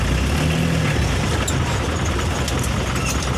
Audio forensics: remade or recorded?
recorded